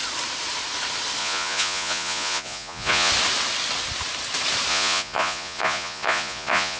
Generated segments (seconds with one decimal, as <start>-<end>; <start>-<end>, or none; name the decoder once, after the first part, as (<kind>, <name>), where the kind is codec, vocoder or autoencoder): 1.2-3.1 (vocoder, Vocos); 4.7-6.8